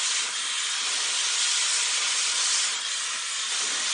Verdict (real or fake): real